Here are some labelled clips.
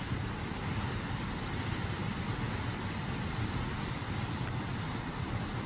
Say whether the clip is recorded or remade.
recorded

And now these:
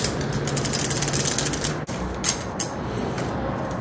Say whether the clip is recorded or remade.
recorded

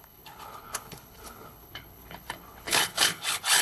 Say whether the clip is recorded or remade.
remade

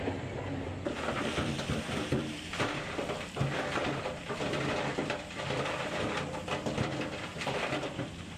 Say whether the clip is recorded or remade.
remade